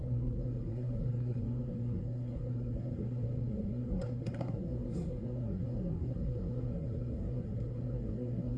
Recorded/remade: remade